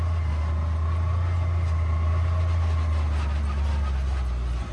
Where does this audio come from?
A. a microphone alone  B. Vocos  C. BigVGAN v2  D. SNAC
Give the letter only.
A